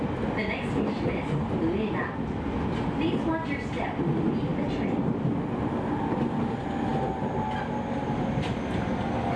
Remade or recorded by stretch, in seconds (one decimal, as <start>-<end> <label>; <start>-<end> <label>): 0.0-9.4 recorded